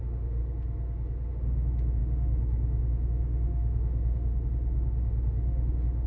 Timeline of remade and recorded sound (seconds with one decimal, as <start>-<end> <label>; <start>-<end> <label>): 0.0-0.4 remade; 0.4-1.3 recorded; 1.3-6.1 remade